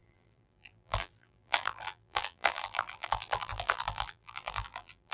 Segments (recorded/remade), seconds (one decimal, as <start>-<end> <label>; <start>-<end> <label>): 0.0-5.1 remade